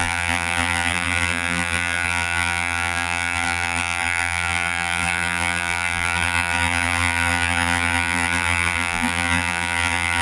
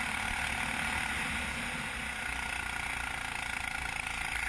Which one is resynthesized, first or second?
first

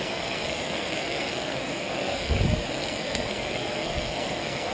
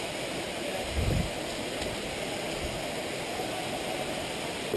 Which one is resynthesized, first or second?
first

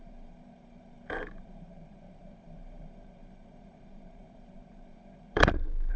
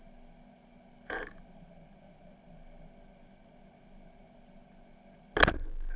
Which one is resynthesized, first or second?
first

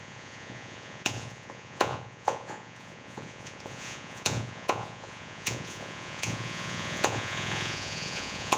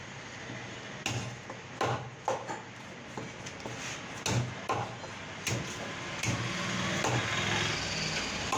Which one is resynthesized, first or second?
first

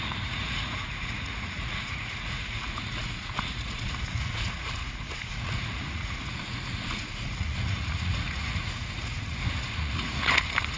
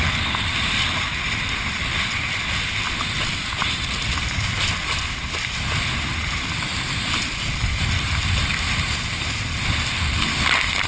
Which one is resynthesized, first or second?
first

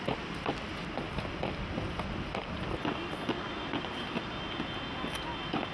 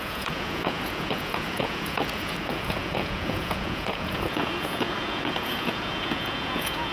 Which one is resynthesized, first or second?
second